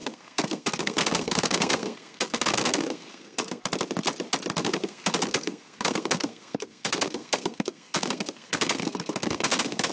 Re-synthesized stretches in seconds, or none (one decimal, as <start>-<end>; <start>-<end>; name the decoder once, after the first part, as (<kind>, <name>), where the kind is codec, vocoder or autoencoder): 0.0-3.6 (codec, SNAC); 4.6-9.9

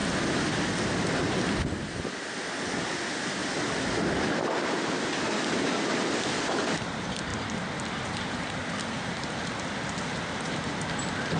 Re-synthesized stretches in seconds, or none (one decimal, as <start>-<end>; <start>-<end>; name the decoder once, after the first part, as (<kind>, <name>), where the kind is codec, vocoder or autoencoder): none

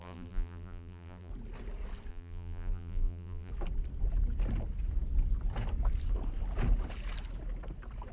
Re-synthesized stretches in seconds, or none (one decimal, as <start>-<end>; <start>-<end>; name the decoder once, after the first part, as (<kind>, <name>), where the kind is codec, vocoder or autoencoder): 0.0-1.3 (vocoder, BigVGAN v2); 2.1-3.5

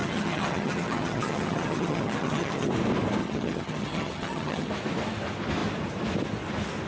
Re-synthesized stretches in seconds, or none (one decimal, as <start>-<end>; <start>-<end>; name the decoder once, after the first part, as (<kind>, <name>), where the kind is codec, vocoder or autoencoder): 0.0-2.7 (vocoder, HiFi-GAN); 3.2-4.7

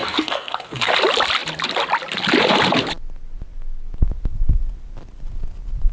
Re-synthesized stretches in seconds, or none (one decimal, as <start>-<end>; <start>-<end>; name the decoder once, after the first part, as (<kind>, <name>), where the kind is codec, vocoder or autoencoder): 0.0-0.9 (codec, SNAC)

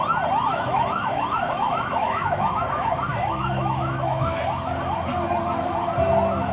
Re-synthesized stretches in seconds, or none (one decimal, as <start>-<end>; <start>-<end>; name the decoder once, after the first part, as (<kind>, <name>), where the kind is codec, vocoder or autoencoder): 0.5-4.4 (autoencoder, DAC-VAE)

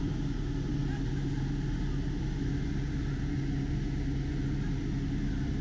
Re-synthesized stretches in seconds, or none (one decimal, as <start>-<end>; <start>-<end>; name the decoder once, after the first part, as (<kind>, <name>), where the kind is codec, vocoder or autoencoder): none

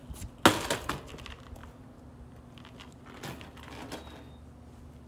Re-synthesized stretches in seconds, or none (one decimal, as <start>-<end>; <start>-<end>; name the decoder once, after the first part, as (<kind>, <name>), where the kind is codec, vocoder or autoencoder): none